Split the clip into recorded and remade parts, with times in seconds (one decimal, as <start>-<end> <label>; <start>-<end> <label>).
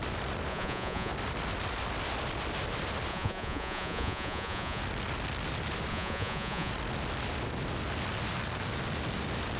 0.0-0.5 recorded; 0.5-1.1 remade; 1.1-3.1 recorded; 3.1-4.8 remade; 4.8-5.9 recorded; 5.9-6.7 remade; 6.7-9.6 recorded